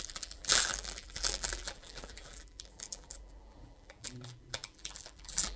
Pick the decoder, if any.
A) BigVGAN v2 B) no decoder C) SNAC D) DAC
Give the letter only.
A